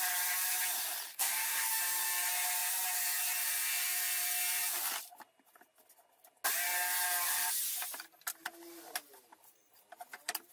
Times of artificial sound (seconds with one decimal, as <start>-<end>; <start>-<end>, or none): 1.1-1.8